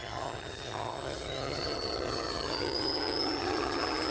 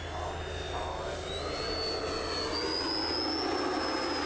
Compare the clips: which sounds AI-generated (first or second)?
first